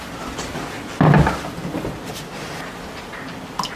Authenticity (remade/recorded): recorded